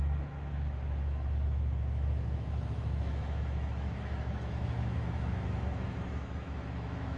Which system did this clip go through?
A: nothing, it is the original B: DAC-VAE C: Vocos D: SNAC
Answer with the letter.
B